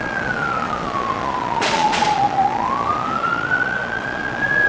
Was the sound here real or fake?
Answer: fake